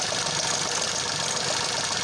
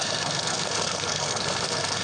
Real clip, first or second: first